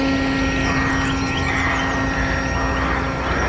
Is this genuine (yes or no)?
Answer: yes